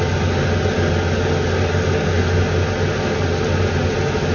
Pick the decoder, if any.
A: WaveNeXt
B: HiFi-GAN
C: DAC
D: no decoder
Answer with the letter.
D